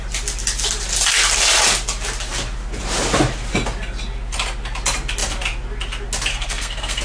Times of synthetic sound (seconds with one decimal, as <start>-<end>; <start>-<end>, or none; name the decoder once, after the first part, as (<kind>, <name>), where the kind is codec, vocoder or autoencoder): 6.3-7.0 (codec, SNAC)